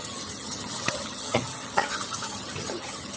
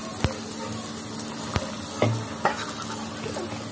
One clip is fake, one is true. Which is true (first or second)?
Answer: second